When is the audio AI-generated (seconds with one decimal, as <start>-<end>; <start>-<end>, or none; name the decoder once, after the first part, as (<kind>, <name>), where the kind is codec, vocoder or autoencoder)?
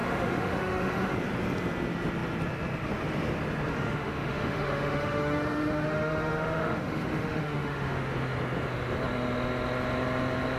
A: 0.0-1.1 (autoencoder, DAC-VAE); 3.7-8.1